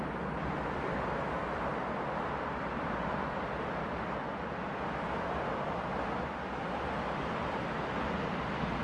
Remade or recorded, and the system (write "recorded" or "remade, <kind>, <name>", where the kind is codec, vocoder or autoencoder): recorded